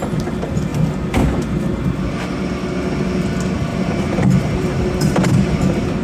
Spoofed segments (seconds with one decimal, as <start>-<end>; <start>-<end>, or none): 3.7-5.6